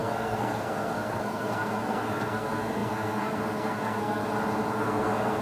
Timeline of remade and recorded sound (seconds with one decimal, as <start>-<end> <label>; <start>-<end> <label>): 0.0-4.2 remade; 4.2-4.7 recorded; 4.7-5.4 remade